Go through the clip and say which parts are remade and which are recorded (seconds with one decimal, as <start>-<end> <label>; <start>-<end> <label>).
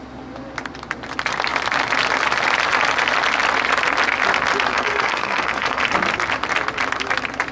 0.0-4.7 recorded; 4.7-5.8 remade; 5.8-7.5 recorded